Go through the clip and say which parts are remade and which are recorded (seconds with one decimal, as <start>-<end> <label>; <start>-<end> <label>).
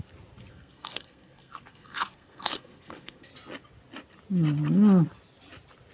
0.0-0.5 recorded; 0.5-3.3 remade; 3.3-5.9 recorded